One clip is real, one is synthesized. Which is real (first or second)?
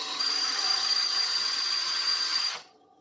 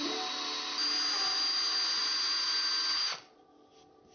second